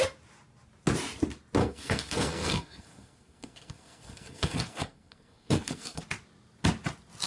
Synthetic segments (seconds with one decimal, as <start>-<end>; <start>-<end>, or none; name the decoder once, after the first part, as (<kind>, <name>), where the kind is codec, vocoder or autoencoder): 1.6-6.0 (codec, SNAC)